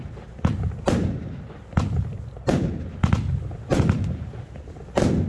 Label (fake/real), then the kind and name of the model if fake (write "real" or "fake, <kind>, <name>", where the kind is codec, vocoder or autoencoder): real